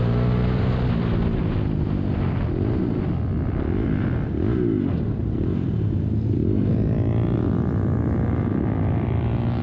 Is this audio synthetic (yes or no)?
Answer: no